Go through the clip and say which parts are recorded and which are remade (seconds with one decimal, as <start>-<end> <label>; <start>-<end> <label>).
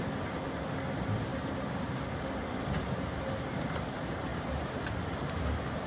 0.0-5.9 recorded